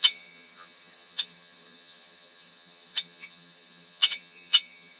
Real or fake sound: fake